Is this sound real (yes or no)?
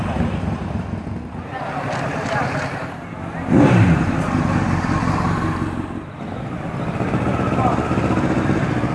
yes